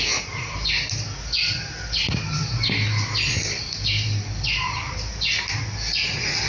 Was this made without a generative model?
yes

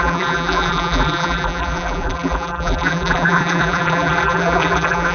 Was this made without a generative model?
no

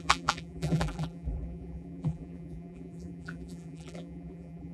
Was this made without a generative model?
no